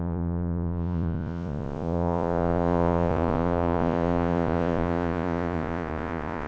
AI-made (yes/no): yes